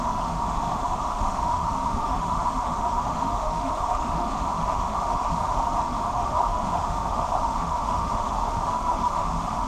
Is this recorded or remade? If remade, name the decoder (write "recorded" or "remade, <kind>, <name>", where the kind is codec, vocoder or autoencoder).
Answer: remade, autoencoder, DAC-VAE